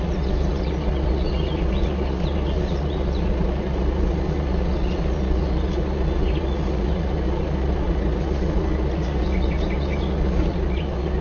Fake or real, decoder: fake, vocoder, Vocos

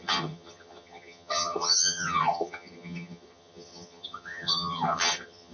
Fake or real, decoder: fake, vocoder, HiFi-GAN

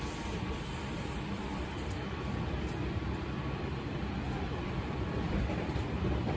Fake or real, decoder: fake, vocoder, BigVGAN v2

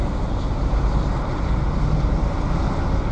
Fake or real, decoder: real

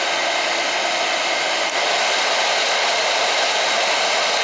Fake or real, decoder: real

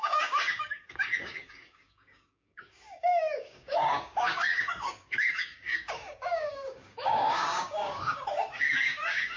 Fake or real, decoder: fake, codec, DAC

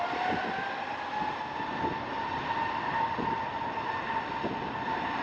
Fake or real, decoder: real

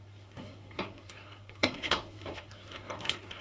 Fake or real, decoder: fake, codec, SNAC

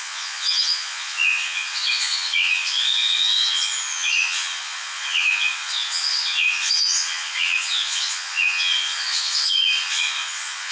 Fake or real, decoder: fake, vocoder, Vocos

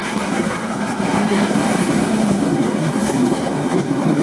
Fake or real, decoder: fake, codec, SNAC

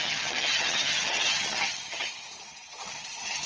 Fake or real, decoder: fake, vocoder, HiFi-GAN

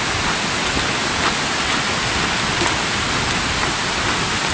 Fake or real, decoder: real